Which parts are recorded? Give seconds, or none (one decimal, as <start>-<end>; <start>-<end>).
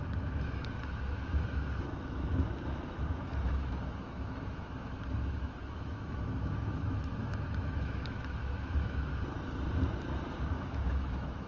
9.1-10.4